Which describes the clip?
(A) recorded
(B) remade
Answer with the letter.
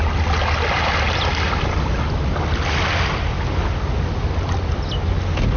A